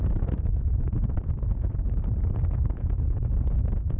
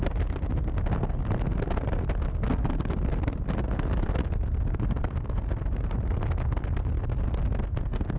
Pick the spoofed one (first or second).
first